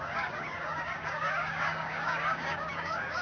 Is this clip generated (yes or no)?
yes